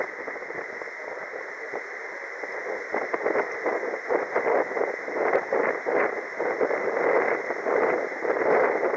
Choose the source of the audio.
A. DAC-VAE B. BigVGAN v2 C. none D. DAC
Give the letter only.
C